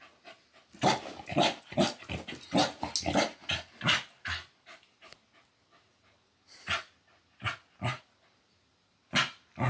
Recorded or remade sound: recorded